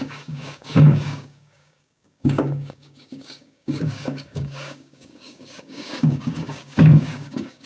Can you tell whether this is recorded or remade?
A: remade